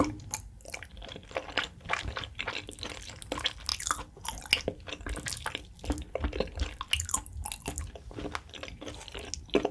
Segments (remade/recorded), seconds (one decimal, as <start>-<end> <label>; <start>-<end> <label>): 0.0-9.7 recorded